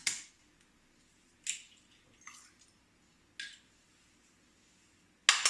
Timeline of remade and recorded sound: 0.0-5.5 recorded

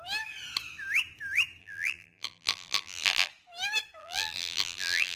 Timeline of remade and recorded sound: 0.0-1.6 recorded; 1.6-3.3 remade; 3.3-4.0 recorded; 4.0-5.2 remade